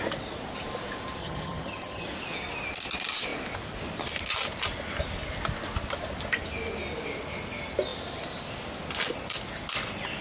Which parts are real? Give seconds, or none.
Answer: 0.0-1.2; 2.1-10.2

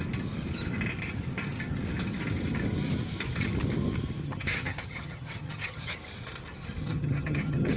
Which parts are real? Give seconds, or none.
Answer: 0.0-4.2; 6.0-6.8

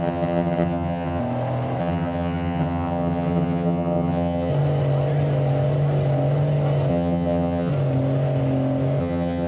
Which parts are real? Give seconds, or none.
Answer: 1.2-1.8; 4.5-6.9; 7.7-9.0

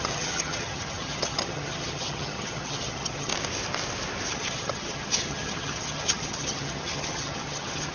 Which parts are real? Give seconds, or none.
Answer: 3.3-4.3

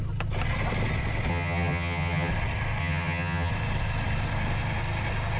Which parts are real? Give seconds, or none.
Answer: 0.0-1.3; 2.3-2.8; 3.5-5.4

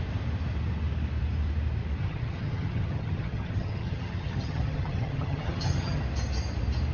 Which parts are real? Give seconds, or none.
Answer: 0.0-2.0; 6.0-6.9